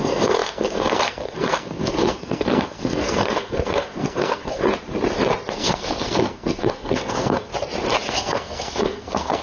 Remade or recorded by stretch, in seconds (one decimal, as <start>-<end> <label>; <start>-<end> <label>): 0.0-4.6 remade; 4.6-5.5 recorded; 5.5-7.5 remade; 7.5-8.1 recorded; 8.1-9.4 remade